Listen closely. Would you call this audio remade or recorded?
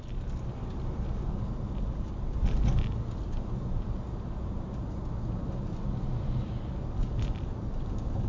recorded